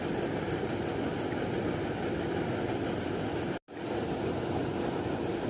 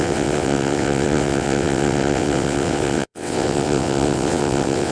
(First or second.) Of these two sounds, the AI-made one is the second